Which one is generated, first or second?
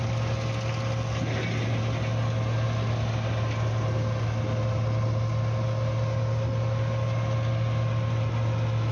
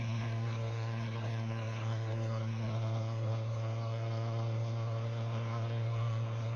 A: second